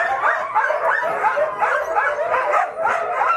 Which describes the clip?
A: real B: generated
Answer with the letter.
A